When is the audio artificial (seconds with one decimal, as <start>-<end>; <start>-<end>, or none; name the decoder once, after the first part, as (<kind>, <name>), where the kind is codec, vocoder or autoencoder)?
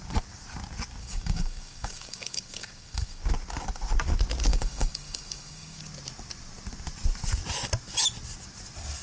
1.0-3.2 (codec, DAC); 4.5-5.8